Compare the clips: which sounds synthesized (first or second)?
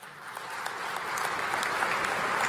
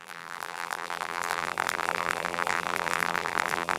second